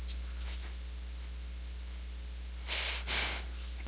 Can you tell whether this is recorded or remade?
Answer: recorded